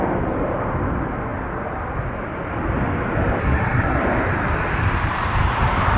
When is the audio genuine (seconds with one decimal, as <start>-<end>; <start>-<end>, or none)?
0.0-3.4; 4.0-6.0

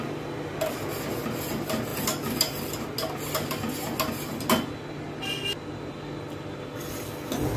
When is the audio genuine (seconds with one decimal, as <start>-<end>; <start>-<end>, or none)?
0.0-7.6

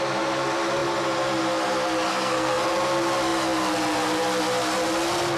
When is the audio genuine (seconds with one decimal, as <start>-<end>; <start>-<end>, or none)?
0.0-2.1; 2.6-5.4

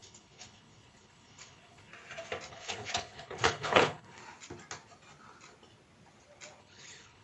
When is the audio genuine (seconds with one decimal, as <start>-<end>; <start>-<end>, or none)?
1.9-2.5; 4.2-6.6

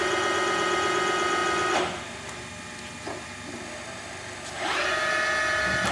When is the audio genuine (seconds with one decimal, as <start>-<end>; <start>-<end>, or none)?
0.0-5.9

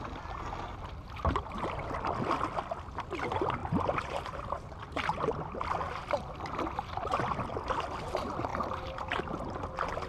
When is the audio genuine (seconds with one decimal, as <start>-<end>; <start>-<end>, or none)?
0.0-3.6; 5.3-8.5; 9.2-10.1

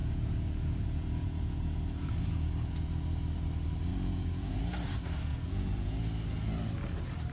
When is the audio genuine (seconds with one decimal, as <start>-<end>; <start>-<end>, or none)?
2.7-3.9; 4.6-5.3; 6.0-7.3